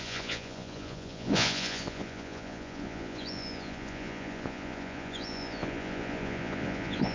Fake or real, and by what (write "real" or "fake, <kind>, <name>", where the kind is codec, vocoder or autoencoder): fake, vocoder, Vocos